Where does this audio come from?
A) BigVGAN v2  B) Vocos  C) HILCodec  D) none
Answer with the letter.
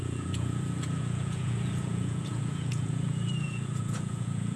B